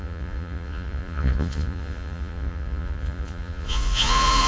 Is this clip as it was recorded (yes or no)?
no